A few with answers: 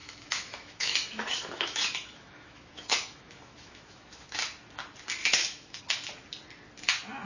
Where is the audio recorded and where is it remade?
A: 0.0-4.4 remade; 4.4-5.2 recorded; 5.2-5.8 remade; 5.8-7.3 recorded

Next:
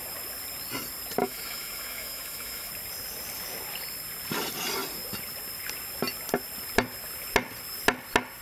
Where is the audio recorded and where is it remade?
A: 0.0-1.2 recorded; 1.2-2.7 remade; 2.7-8.4 recorded

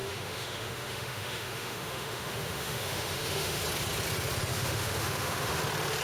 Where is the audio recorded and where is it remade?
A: 0.0-3.6 remade; 3.6-4.5 recorded; 4.5-5.6 remade; 5.6-6.0 recorded